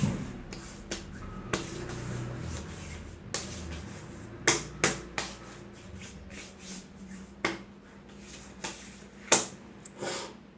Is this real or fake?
real